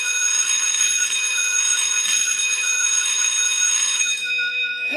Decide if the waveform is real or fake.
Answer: fake